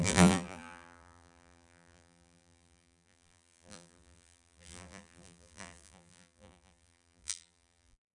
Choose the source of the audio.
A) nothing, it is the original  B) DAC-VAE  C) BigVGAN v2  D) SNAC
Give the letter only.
C